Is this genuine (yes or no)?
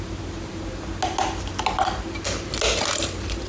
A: yes